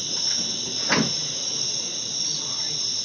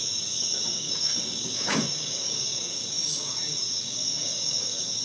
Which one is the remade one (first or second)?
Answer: second